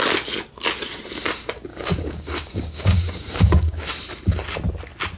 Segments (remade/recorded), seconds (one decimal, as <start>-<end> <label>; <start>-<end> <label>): 0.0-1.7 recorded; 1.7-3.9 remade; 3.9-5.2 recorded